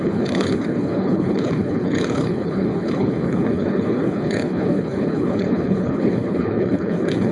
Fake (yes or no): yes